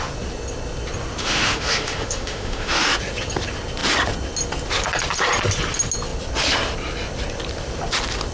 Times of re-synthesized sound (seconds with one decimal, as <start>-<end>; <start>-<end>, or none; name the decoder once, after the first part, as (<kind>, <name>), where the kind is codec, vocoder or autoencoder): 1.2-2.8 (autoencoder, DAC-VAE)